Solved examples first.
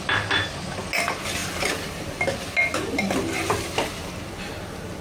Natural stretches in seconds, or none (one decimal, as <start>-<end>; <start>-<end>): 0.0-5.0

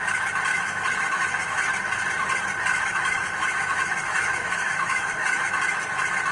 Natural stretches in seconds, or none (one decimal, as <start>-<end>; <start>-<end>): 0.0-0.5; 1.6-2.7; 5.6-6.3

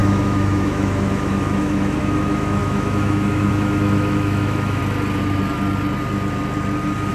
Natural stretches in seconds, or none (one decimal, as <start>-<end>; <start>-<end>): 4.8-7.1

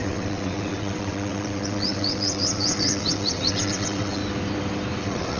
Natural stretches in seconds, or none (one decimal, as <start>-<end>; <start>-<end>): 4.2-5.0

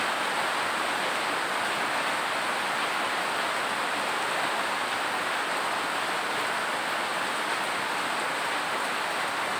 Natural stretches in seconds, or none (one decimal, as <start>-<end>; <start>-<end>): 0.0-9.6

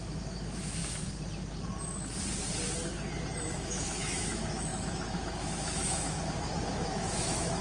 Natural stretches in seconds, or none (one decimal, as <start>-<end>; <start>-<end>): 0.8-3.4